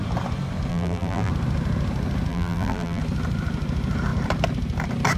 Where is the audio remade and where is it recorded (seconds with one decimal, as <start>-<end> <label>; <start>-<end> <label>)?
0.0-0.7 recorded; 0.7-1.3 remade; 1.3-2.3 recorded; 2.3-3.0 remade; 3.0-5.2 recorded